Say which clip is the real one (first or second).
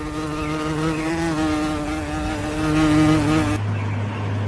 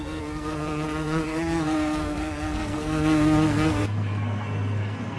first